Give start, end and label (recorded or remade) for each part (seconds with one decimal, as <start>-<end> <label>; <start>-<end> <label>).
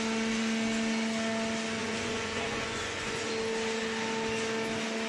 0.0-1.8 recorded; 1.8-3.3 remade; 3.3-5.1 recorded